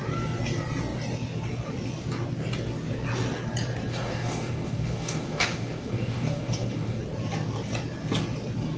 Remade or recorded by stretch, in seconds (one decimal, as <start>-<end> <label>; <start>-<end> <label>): 0.0-3.9 recorded; 3.9-7.0 remade; 7.0-8.8 recorded